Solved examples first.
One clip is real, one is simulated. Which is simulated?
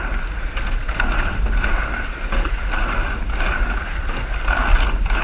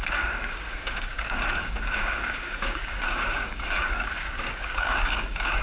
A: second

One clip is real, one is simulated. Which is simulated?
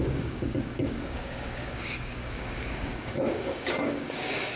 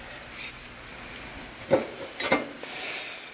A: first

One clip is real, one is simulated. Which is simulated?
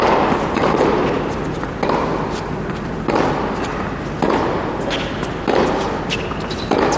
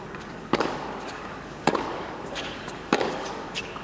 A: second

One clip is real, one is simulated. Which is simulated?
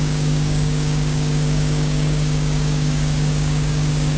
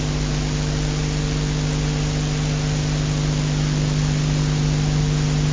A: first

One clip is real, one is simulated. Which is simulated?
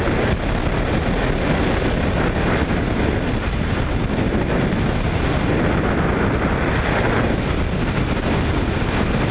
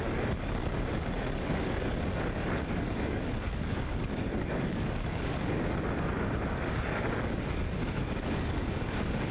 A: second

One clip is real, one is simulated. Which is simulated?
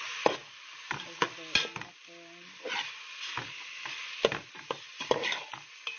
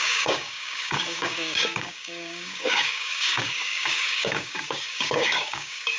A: second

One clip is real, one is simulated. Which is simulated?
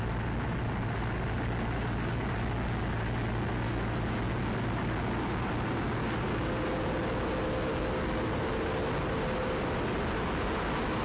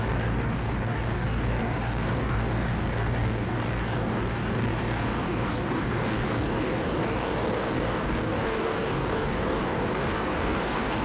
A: second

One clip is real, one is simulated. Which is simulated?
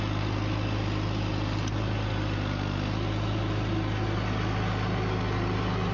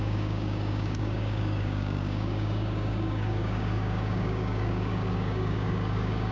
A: second